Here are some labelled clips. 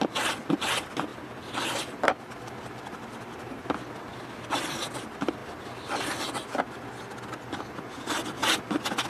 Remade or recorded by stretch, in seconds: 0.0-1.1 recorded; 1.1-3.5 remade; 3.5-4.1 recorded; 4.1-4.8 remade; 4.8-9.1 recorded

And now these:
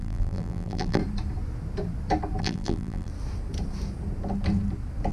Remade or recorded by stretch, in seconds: 0.0-1.0 remade; 1.0-2.4 recorded; 2.4-3.1 remade; 3.1-5.1 recorded

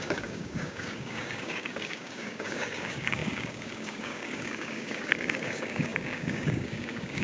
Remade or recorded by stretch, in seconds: 0.0-7.2 remade

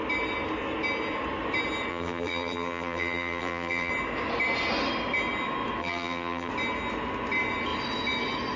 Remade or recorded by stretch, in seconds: 0.0-1.9 recorded; 1.9-3.9 remade; 3.9-5.8 recorded; 5.8-6.5 remade; 6.5-8.6 recorded

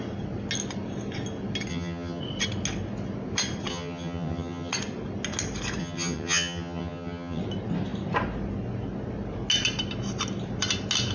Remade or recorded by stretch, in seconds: 0.0-1.7 recorded; 1.7-2.2 remade; 2.2-3.7 recorded; 3.7-4.7 remade; 4.7-5.8 recorded; 5.8-7.4 remade; 7.4-11.1 recorded

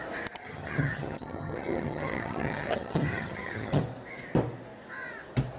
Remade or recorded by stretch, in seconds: 0.0-0.4 recorded; 0.4-3.8 remade; 3.8-5.6 recorded

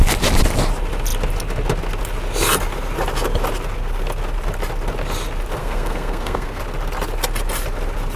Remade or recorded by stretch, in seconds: 0.0-5.6 recorded; 5.6-6.6 remade; 6.6-8.2 recorded